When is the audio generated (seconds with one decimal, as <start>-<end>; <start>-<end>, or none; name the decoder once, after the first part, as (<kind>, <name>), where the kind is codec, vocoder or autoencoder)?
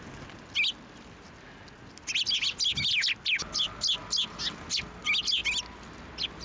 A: none